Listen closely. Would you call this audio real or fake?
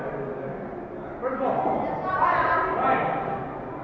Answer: real